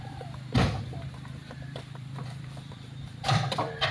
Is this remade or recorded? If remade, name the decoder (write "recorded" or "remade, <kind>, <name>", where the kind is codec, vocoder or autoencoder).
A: remade, vocoder, BigVGAN v2